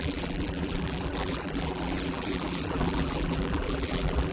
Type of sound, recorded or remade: remade